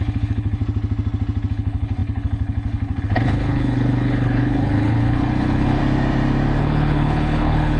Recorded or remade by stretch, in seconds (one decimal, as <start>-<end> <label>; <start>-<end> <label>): 0.0-0.6 remade; 0.6-1.5 recorded; 1.5-5.8 remade; 5.8-6.6 recorded; 6.6-7.8 remade